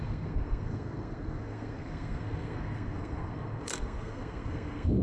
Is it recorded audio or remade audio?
remade